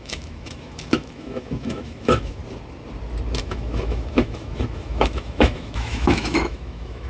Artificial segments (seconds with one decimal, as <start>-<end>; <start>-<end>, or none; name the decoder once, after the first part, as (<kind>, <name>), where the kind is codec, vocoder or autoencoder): 0.0-2.4 (autoencoder, DAC-VAE); 3.4-7.1